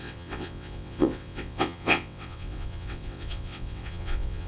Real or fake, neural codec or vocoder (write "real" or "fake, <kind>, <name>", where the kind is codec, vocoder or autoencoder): fake, vocoder, WaveNeXt